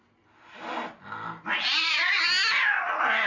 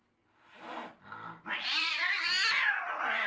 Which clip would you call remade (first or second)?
second